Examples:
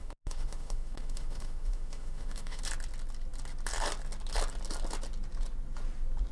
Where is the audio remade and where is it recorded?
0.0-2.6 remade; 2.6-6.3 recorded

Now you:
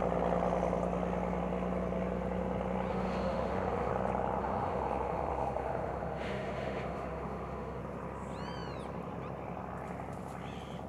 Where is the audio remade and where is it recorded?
0.0-2.9 recorded; 2.9-3.9 remade; 3.9-4.4 recorded; 4.4-7.8 remade; 7.8-10.9 recorded

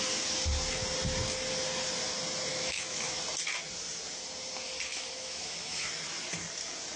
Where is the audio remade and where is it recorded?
0.0-2.5 recorded; 2.5-3.2 remade; 3.2-4.9 recorded; 4.9-5.9 remade; 5.9-7.0 recorded